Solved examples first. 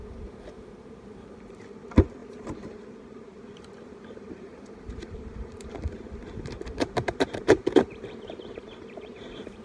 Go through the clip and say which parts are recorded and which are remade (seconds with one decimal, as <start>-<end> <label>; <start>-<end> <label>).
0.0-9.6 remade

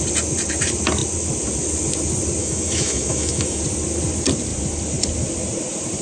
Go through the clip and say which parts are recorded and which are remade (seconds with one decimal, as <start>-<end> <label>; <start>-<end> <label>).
0.0-2.4 recorded; 2.4-3.6 remade; 3.6-6.0 recorded

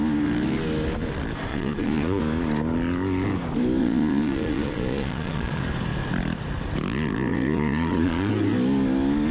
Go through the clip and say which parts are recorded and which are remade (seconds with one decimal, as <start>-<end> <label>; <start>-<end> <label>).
0.0-1.5 recorded; 1.5-2.2 remade; 2.2-3.8 recorded; 3.8-5.6 remade; 5.6-7.3 recorded; 7.3-8.3 remade; 8.3-9.3 recorded